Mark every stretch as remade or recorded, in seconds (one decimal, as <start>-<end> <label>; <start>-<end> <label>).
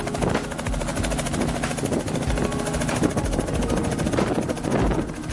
0.0-5.3 recorded